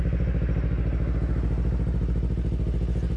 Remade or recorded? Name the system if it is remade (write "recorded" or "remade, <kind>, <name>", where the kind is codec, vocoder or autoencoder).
recorded